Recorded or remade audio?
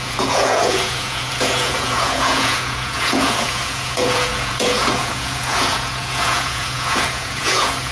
remade